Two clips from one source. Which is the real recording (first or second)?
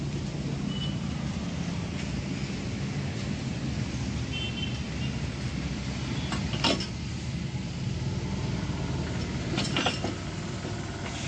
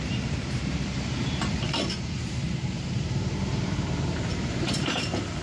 first